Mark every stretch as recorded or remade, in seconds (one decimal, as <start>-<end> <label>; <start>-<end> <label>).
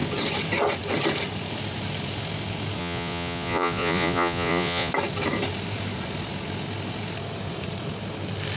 0.0-2.8 recorded; 2.8-4.9 remade; 4.9-8.6 recorded